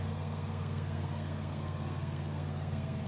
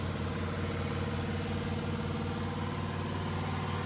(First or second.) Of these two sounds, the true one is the second